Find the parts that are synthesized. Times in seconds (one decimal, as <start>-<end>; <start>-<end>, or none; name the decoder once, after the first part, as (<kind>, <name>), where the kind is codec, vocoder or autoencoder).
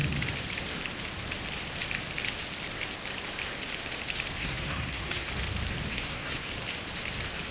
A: 4.4-5.3 (codec, SNAC); 5.9-6.5